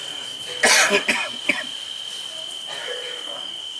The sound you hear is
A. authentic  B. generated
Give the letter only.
A